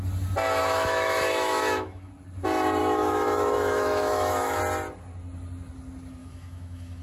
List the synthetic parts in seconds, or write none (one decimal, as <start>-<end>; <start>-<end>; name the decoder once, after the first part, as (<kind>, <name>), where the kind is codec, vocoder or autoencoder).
0.6-2.1 (autoencoder, DAC-VAE); 2.8-4.6; 6.2-7.0